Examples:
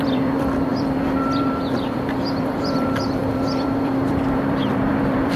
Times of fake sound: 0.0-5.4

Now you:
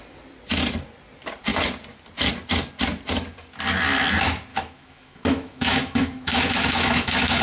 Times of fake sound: 4.5-7.4

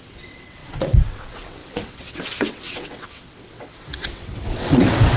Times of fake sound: 0.0-5.2